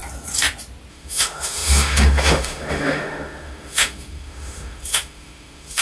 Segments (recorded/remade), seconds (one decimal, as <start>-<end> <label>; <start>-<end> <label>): 0.0-0.9 recorded; 0.9-5.8 remade